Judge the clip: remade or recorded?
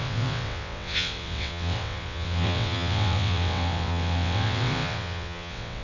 remade